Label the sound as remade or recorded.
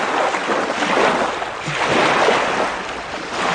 recorded